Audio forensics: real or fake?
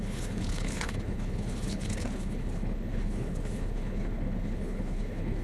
fake